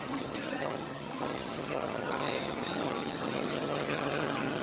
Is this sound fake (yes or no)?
yes